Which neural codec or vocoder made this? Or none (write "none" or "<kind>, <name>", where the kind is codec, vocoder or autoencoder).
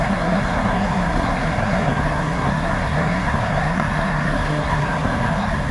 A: codec, SNAC